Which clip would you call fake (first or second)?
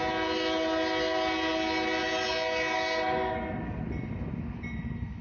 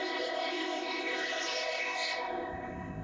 second